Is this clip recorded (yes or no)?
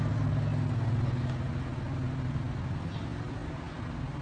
yes